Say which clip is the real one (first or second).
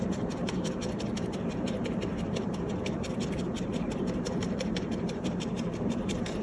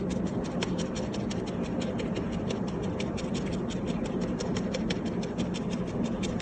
second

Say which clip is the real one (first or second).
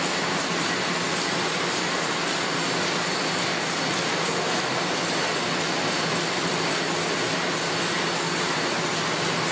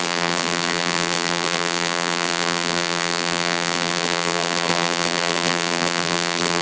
first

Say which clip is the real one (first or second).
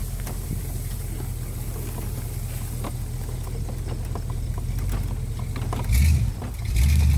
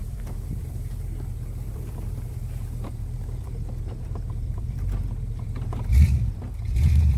first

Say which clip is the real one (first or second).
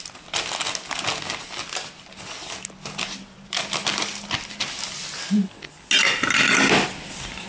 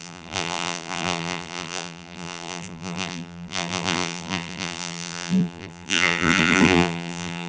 first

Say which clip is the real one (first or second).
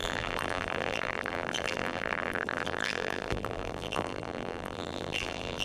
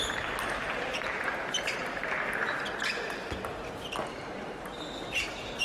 second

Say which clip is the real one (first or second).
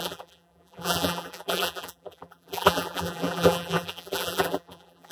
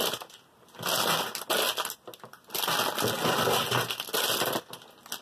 second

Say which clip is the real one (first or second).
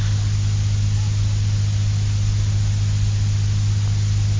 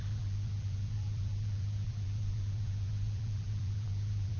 first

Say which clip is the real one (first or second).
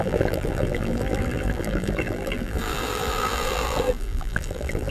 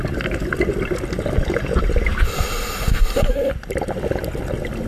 second